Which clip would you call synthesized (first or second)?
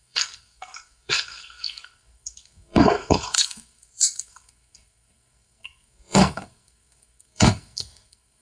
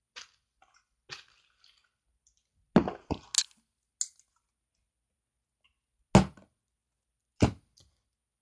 first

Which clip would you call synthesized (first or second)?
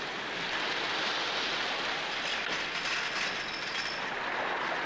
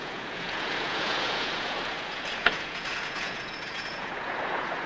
second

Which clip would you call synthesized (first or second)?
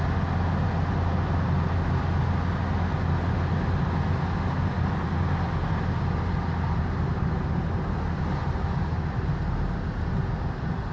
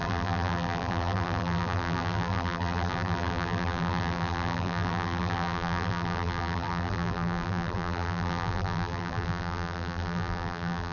second